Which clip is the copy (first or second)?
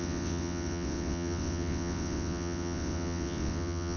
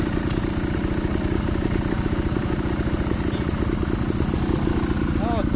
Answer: first